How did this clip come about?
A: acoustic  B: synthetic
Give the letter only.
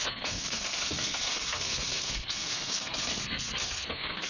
B